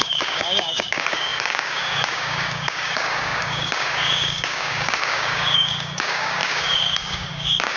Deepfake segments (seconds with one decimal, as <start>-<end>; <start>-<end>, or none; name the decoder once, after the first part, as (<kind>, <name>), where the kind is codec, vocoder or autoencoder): 0.0-7.8 (codec, DAC)